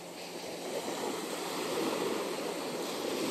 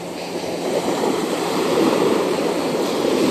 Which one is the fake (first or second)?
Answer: second